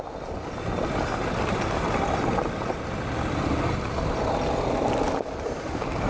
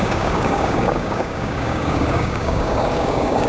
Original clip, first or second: first